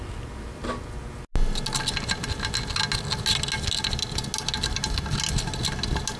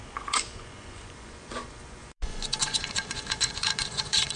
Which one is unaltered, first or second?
first